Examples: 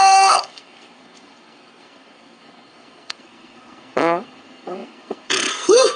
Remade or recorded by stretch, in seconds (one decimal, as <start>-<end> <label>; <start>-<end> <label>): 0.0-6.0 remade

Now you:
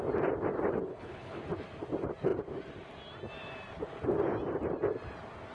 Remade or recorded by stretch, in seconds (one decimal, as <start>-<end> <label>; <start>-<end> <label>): 0.0-0.9 recorded; 0.9-1.4 remade; 1.4-5.5 recorded

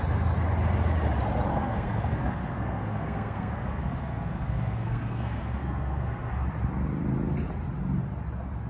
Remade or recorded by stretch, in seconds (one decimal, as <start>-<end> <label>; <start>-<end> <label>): 0.0-1.5 recorded; 1.5-6.3 remade; 6.3-8.7 recorded

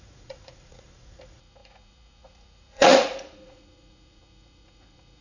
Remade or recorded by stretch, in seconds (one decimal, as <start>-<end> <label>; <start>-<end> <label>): 0.0-5.2 remade

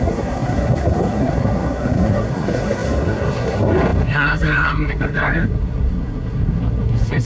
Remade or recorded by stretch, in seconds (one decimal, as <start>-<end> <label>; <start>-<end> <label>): 0.0-7.2 remade